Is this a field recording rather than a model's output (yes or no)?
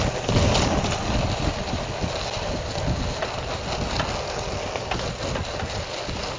yes